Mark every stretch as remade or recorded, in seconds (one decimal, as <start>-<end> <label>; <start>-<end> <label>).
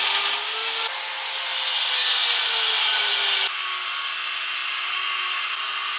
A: 0.0-6.0 recorded